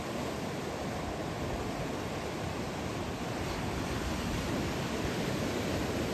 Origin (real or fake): real